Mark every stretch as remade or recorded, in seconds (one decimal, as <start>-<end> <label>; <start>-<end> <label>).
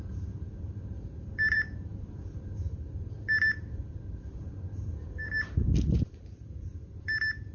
0.0-1.9 remade; 1.9-2.7 recorded; 2.7-7.5 remade